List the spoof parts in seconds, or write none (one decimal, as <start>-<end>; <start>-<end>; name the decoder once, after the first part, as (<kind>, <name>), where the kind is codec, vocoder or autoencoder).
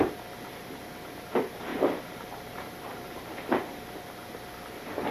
1.7-4.0 (vocoder, BigVGAN v2)